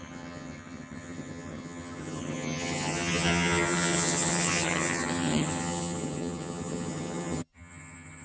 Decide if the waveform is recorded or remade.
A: remade